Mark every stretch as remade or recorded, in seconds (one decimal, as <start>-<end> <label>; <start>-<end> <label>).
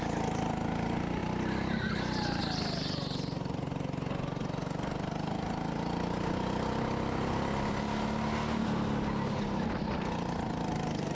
0.0-11.1 recorded